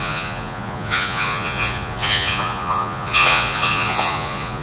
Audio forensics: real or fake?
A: fake